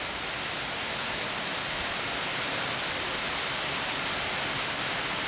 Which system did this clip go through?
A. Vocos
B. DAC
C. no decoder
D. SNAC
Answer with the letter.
C